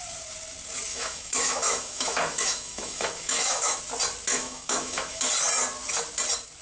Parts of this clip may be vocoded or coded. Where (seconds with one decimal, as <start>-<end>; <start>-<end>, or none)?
0.9-3.8; 4.3-5.3